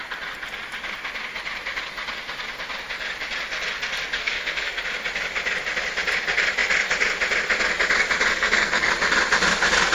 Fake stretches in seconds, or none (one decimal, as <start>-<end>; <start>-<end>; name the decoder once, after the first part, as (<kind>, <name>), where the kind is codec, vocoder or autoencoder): 4.2-4.8 (codec, SNAC); 8.3-8.9